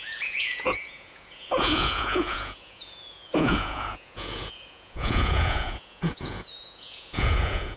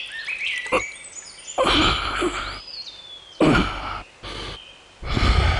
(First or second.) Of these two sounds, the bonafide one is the second